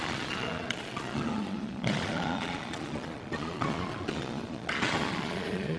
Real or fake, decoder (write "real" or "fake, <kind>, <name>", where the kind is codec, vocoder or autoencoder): fake, vocoder, Vocos